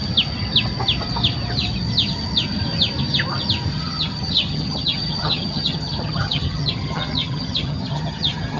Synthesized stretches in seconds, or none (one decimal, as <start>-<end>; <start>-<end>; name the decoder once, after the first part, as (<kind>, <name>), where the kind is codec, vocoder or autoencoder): 3.7-8.6 (vocoder, HiFi-GAN)